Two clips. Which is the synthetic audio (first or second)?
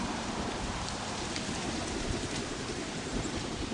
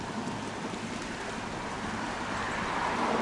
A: first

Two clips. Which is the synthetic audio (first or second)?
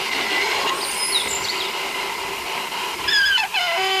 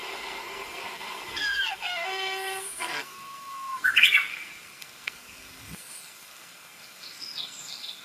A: second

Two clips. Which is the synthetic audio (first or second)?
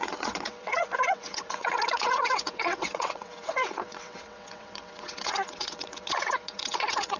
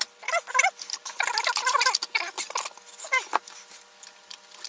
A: first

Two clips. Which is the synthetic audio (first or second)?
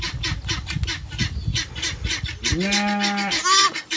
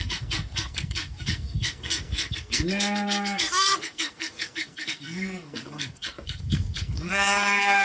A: second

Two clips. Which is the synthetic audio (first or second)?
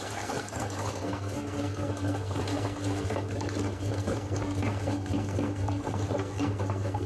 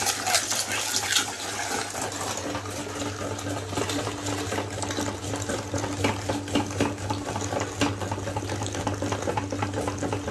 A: first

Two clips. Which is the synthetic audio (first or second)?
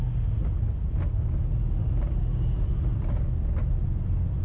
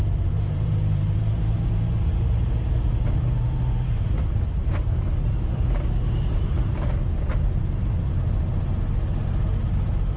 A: second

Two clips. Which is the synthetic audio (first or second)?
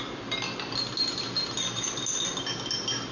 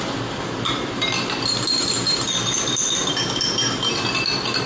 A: second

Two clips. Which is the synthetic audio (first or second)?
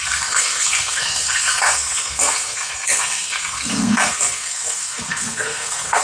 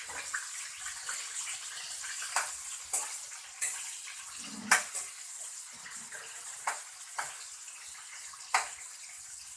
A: first